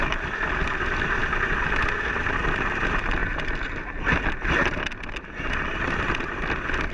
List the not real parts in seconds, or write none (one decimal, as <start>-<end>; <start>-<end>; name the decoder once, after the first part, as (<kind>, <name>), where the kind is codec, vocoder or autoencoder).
none